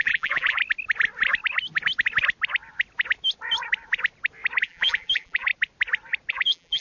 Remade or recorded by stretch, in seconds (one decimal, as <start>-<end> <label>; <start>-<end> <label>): 0.0-0.6 remade; 0.6-4.6 recorded; 4.6-5.5 remade; 5.5-6.3 recorded; 6.3-6.8 remade